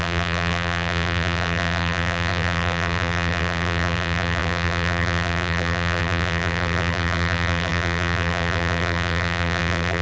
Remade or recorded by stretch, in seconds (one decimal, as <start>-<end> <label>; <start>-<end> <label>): 0.0-10.0 remade